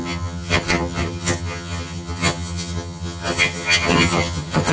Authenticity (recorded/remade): remade